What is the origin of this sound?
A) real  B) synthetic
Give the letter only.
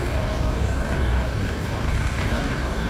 B